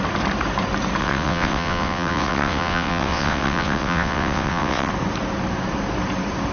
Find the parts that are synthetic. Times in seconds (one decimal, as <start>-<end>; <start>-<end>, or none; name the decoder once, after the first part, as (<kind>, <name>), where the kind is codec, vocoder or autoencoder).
1.0-4.9 (vocoder, WaveNeXt)